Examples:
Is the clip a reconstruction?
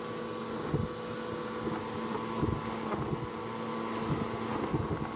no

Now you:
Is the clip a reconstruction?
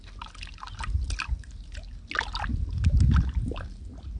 no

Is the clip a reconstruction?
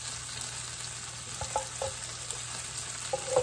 no